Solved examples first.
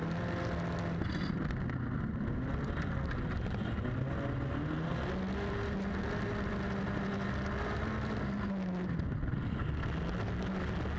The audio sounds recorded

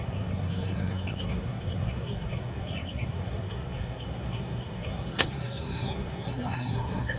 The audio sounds remade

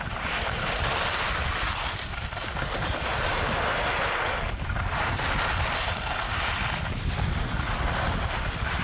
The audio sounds recorded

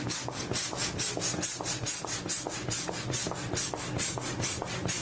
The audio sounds recorded